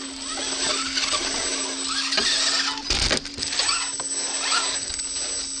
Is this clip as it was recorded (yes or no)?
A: yes